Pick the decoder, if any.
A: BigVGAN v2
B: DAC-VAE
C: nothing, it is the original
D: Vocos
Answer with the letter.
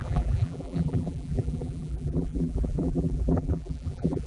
A